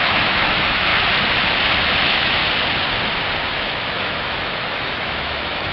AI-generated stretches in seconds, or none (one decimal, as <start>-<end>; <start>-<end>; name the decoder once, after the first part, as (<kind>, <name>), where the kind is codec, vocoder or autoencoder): 0.0-0.9 (autoencoder, DAC-VAE); 2.0-2.4; 3.9-5.7